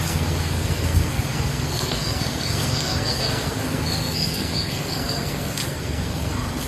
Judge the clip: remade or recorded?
remade